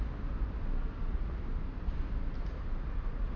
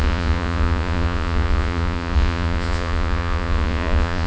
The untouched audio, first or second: first